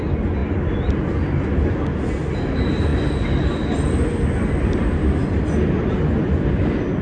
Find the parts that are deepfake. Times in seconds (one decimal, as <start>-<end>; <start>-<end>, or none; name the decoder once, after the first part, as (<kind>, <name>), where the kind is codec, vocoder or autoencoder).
none